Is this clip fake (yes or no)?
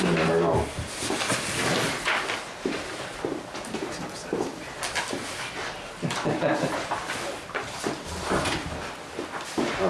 no